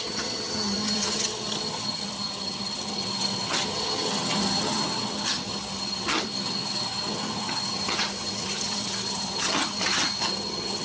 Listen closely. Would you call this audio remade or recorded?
remade